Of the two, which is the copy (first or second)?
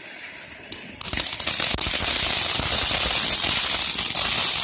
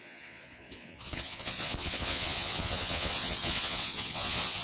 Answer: second